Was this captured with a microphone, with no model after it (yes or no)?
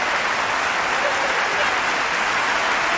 yes